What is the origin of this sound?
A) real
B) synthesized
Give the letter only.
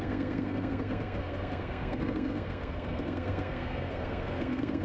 B